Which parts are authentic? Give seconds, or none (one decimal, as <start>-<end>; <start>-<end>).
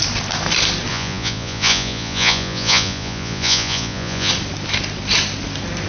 0.0-0.9; 4.3-5.9